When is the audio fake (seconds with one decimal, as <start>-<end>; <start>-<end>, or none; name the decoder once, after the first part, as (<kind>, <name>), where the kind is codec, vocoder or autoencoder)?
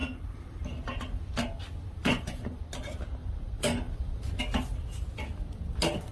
2.0-2.7 (vocoder, Vocos); 3.2-4.4